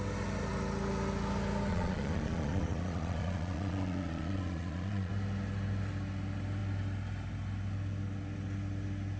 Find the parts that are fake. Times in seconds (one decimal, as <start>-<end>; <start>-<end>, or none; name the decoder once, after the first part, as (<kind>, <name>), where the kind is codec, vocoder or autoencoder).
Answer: 1.7-5.1 (vocoder, Vocos)